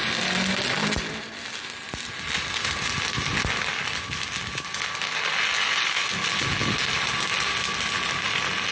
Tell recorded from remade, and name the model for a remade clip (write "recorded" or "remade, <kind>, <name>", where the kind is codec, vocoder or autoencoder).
recorded